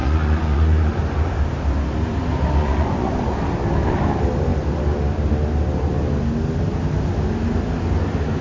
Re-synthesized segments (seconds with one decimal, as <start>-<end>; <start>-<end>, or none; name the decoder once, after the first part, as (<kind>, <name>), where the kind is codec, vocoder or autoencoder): 0.0-1.0 (vocoder, Vocos); 2.6-3.2